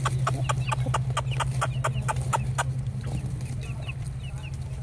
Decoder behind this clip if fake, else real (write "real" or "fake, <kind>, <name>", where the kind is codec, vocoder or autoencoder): real